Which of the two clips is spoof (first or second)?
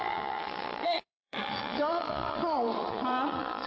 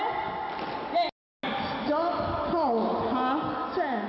first